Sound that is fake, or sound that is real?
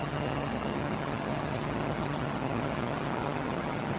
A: fake